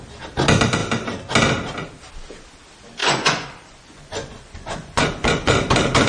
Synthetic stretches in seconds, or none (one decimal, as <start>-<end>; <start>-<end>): 3.0-5.5